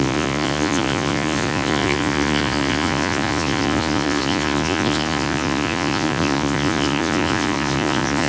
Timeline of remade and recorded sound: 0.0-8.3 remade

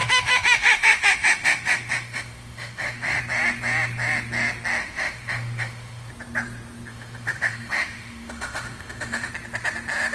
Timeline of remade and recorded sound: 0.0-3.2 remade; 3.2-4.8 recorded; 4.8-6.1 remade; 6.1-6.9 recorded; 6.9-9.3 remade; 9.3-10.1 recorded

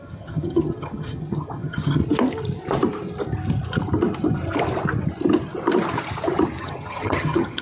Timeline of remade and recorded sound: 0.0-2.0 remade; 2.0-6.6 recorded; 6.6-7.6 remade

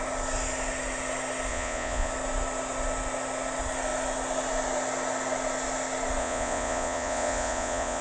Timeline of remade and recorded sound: 0.0-1.5 recorded; 1.5-2.1 remade; 2.1-6.2 recorded; 6.2-8.0 remade

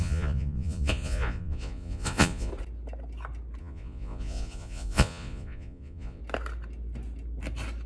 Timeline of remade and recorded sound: 0.0-2.5 remade; 2.5-3.6 recorded; 3.6-6.2 remade; 6.2-7.9 recorded

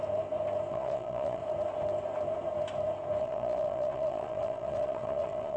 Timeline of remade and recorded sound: 0.0-0.7 recorded; 0.7-1.4 remade; 1.4-3.2 recorded; 3.2-5.6 remade